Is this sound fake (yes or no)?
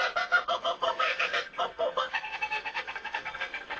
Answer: yes